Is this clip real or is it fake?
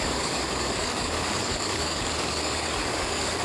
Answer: fake